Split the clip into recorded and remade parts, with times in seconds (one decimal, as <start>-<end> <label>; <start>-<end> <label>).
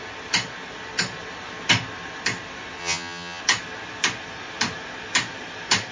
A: 0.0-2.8 recorded; 2.8-3.4 remade; 3.4-5.9 recorded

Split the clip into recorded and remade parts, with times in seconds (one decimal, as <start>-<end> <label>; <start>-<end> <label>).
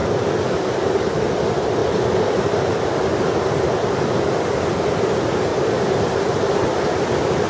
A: 0.0-1.8 recorded; 1.8-2.7 remade; 2.7-5.5 recorded; 5.5-6.9 remade; 6.9-7.5 recorded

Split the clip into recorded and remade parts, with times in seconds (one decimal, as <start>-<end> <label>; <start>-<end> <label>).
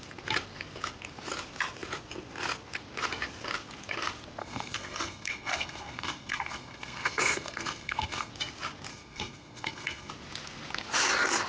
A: 0.0-4.4 recorded; 4.4-8.3 remade; 8.3-8.9 recorded; 8.9-10.1 remade; 10.1-11.5 recorded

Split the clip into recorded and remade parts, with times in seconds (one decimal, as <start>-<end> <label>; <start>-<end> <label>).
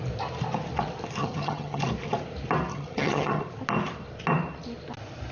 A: 0.0-1.2 recorded; 1.2-1.8 remade; 1.8-2.7 recorded; 2.7-3.4 remade; 3.4-5.3 recorded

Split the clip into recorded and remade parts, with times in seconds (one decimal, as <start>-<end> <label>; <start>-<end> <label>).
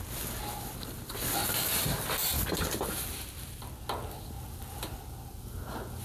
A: 0.0-6.0 recorded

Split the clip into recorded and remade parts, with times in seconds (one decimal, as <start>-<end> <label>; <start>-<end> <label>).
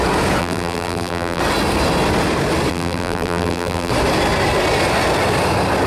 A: 0.0-0.4 recorded; 0.4-1.4 remade; 1.4-2.7 recorded; 2.7-3.9 remade; 3.9-5.9 recorded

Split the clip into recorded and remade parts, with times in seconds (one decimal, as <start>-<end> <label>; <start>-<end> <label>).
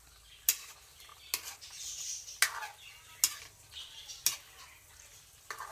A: 0.0-5.7 recorded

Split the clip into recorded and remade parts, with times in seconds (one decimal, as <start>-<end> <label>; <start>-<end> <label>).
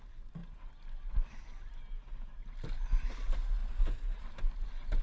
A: 0.0-5.0 recorded